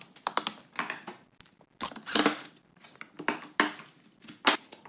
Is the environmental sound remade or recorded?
recorded